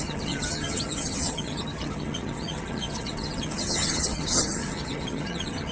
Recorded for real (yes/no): no